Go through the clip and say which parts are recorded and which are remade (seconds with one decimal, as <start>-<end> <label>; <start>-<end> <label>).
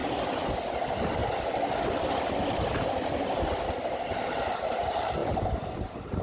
0.0-5.2 recorded; 5.2-5.7 remade; 5.7-6.2 recorded